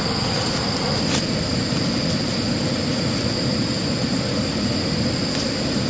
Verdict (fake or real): real